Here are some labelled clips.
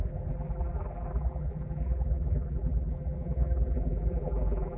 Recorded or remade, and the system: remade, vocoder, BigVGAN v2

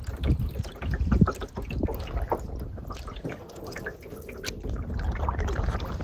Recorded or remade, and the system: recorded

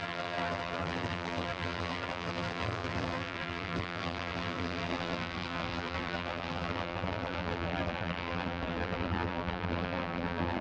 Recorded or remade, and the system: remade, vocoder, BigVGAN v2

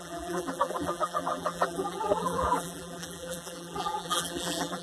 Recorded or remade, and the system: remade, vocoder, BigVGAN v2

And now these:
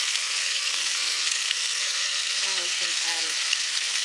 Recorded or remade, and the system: remade, codec, SNAC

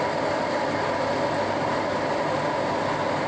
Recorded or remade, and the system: recorded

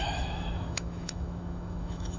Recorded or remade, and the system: remade, autoencoder, DAC-VAE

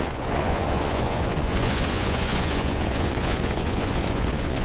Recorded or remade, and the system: remade, vocoder, Vocos